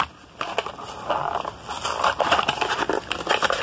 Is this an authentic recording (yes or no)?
yes